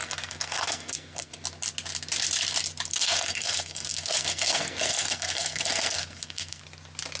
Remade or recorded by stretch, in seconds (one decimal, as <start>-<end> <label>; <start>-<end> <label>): 0.0-1.3 remade; 1.3-2.9 recorded; 2.9-6.6 remade; 6.6-7.2 recorded